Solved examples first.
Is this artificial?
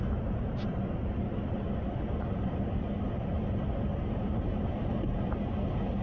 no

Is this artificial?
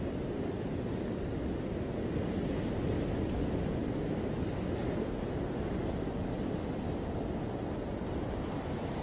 no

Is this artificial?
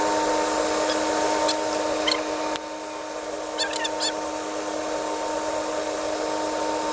no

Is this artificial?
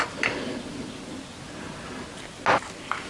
no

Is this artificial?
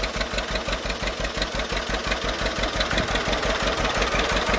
no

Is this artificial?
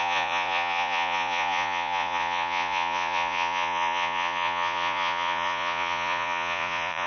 yes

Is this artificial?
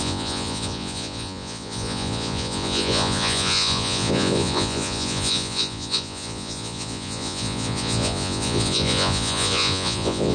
yes